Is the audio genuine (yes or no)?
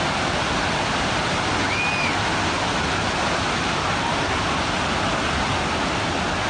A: yes